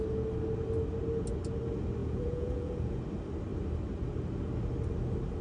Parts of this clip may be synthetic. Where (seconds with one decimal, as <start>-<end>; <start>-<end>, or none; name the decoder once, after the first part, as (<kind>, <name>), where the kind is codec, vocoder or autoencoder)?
2.0-3.0 (vocoder, Vocos)